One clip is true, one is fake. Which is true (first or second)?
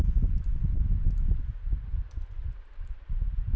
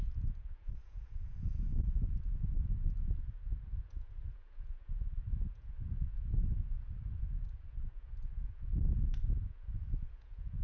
first